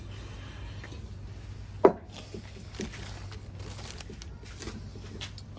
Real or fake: real